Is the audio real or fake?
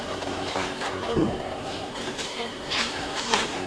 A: fake